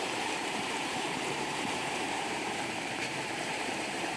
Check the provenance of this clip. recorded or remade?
remade